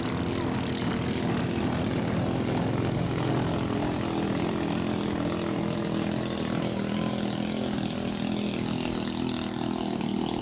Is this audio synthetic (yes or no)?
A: no